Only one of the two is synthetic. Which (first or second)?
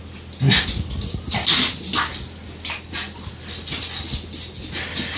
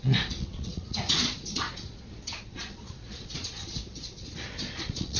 second